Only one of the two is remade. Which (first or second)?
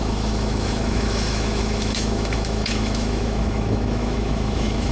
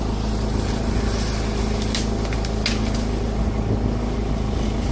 first